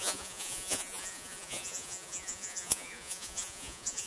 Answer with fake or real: fake